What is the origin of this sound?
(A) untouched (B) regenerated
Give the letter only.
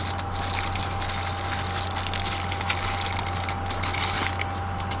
A